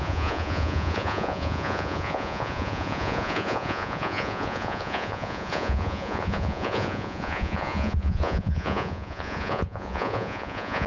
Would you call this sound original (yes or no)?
no